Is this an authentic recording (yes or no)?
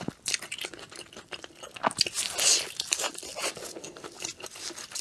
yes